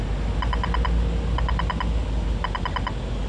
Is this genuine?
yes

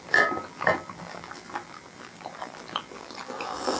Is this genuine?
no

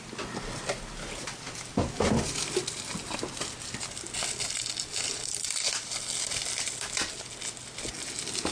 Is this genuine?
yes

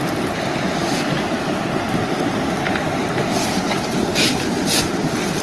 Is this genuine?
yes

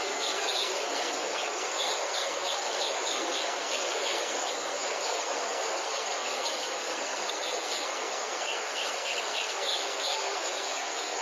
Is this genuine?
no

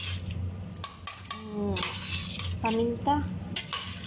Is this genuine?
yes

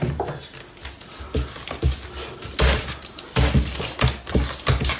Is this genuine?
yes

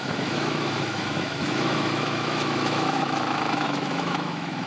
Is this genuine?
no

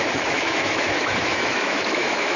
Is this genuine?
no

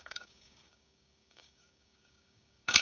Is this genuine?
no